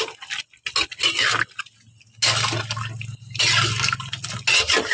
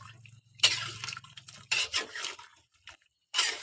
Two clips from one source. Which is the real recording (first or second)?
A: first